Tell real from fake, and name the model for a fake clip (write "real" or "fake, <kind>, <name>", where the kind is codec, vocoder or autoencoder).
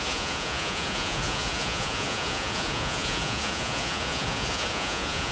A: fake, vocoder, Vocos